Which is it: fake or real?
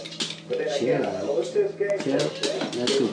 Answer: real